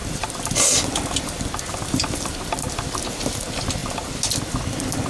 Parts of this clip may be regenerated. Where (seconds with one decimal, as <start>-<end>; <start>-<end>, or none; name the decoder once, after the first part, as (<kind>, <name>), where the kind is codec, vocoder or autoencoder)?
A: none